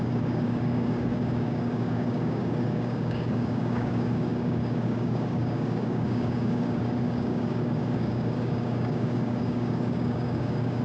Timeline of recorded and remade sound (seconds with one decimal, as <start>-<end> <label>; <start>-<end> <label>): 0.0-10.8 remade